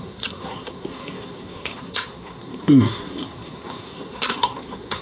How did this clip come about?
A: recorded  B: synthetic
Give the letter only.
B